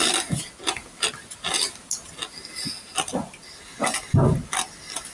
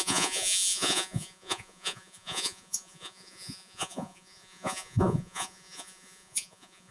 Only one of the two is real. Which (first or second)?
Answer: first